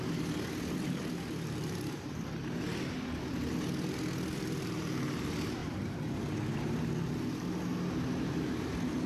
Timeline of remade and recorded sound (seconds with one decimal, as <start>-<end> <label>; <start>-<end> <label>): 0.0-9.1 recorded